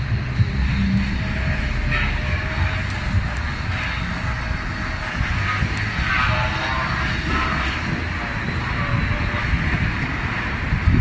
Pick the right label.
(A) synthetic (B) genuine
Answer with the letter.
B